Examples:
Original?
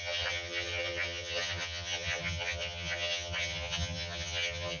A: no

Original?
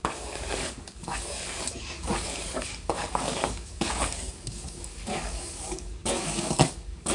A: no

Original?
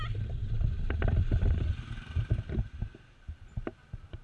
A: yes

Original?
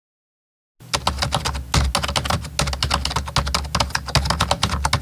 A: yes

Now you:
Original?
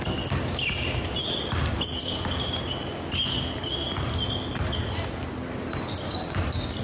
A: yes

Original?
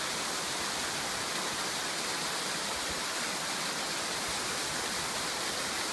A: yes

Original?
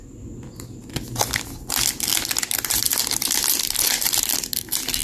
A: yes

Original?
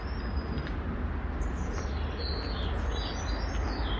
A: yes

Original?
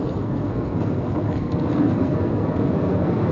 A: no